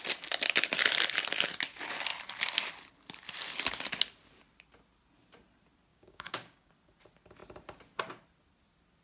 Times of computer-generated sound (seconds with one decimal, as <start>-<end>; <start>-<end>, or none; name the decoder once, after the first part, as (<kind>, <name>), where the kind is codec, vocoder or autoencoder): 5.9-6.7 (codec, DAC)